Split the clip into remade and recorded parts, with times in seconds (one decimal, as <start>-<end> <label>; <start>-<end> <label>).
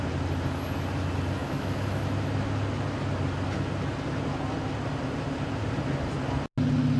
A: 0.0-1.4 recorded; 1.4-2.0 remade; 2.0-7.0 recorded